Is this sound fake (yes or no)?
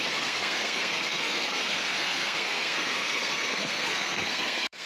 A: yes